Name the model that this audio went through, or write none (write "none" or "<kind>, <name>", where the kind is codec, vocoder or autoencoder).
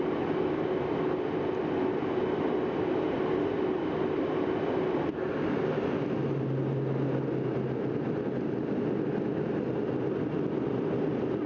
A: none